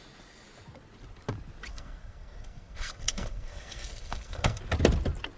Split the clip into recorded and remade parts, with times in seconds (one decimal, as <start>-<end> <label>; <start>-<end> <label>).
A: 0.0-1.7 recorded; 1.7-4.6 remade; 4.6-5.4 recorded